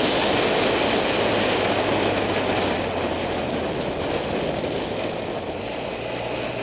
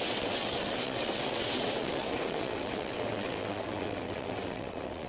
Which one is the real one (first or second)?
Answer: first